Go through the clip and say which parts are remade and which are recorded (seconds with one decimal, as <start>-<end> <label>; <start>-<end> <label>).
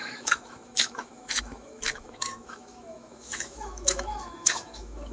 0.0-5.1 remade